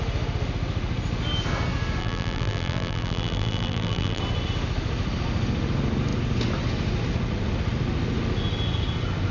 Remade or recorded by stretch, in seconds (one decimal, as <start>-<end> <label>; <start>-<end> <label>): 0.0-2.0 recorded; 2.0-4.2 remade; 4.2-9.3 recorded